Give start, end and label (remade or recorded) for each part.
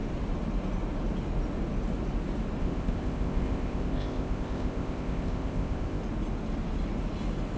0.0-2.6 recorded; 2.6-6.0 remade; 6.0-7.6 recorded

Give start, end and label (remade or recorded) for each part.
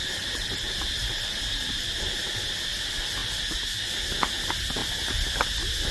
0.0-2.1 remade; 2.1-5.9 recorded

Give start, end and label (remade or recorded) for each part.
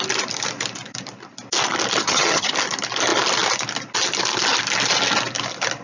0.0-2.0 recorded; 2.0-2.5 remade; 2.5-5.8 recorded